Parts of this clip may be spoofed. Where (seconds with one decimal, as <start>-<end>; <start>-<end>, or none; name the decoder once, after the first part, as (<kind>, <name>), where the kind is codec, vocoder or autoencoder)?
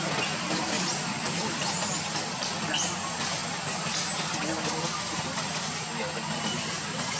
none